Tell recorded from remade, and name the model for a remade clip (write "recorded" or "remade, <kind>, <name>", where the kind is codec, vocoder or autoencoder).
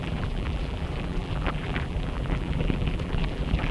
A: remade, vocoder, BigVGAN v2